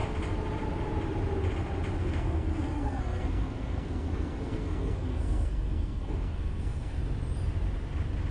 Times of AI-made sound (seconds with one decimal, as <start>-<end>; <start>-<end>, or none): 2.0-7.0